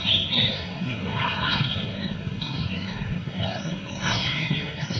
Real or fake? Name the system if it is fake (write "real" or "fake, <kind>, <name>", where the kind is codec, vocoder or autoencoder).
fake, codec, SNAC